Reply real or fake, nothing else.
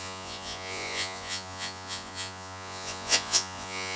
fake